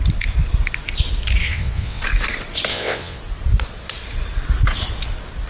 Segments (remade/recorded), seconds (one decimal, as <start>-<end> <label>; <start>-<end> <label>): 0.0-1.4 recorded; 1.4-2.0 remade; 2.0-2.7 recorded; 2.7-3.2 remade; 3.2-5.5 recorded